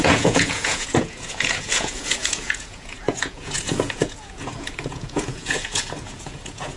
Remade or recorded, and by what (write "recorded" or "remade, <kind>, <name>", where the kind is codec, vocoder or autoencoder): remade, vocoder, Vocos